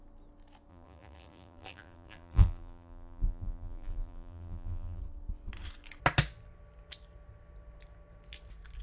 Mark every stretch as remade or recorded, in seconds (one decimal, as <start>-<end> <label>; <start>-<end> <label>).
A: 0.0-0.7 recorded; 0.7-5.0 remade; 5.0-8.8 recorded